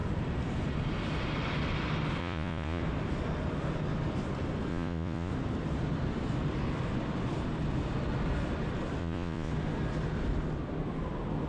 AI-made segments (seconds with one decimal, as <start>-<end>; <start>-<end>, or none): 2.2-2.8; 4.7-5.3; 9.0-9.5